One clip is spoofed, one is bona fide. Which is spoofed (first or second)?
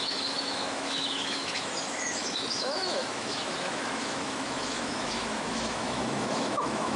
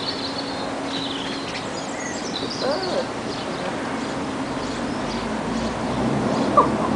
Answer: first